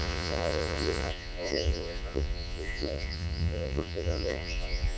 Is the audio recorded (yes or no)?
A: no